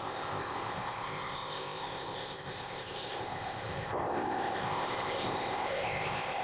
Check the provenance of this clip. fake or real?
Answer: fake